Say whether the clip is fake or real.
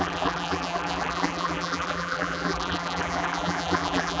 fake